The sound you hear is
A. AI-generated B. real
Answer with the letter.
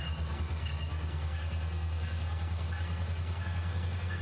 A